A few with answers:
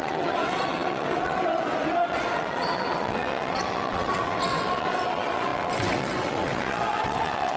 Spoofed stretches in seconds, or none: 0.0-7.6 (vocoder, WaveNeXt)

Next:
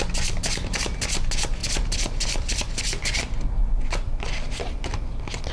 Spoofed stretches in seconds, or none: none

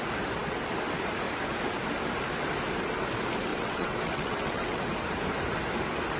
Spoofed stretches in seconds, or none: 3.5-4.8 (vocoder, WaveNeXt)

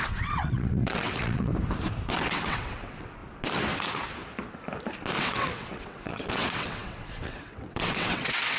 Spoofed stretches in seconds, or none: 0.0-1.5 (vocoder, WaveNeXt); 2.1-3.2; 5.2-8.6

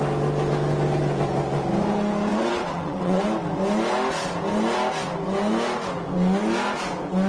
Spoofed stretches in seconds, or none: 2.3-3.2 (vocoder, WaveNeXt)